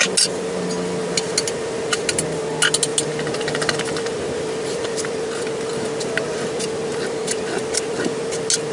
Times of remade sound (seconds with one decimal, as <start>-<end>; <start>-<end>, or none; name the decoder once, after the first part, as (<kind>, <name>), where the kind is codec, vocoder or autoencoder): none